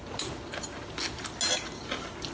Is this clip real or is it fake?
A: real